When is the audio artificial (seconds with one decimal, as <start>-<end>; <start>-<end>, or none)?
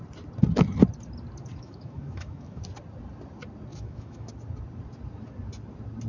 1.5-2.6; 3.7-4.3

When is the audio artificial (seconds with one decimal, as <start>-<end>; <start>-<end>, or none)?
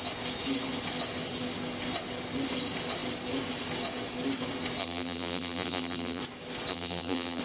4.8-6.2; 6.7-7.4